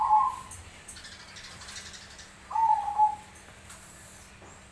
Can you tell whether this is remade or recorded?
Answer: recorded